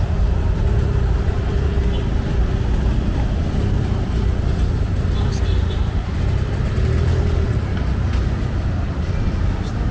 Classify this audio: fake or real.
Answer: real